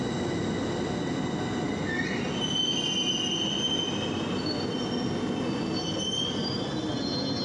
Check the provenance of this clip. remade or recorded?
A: recorded